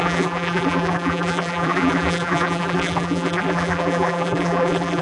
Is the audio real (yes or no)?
no